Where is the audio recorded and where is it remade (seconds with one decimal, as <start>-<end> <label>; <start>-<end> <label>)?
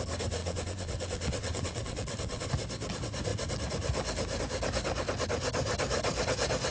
0.0-0.4 recorded; 0.4-2.5 remade; 2.5-6.7 recorded